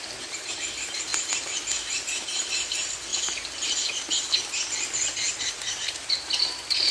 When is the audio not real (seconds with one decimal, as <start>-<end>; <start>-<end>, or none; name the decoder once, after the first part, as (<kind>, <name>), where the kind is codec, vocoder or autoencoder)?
0.0-1.1 (vocoder, BigVGAN v2); 1.7-3.1; 5.4-6.9